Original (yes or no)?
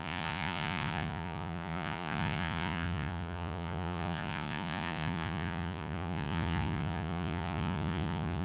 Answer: no